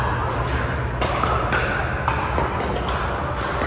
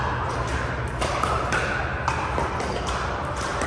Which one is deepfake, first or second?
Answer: second